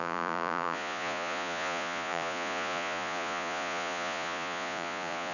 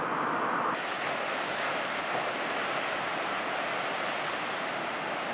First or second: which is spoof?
first